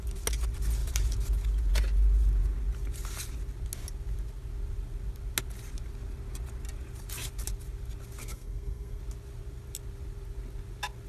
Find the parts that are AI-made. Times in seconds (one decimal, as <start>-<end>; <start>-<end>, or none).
8.2-9.0